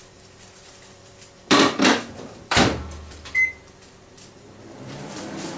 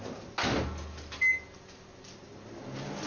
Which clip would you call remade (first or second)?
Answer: first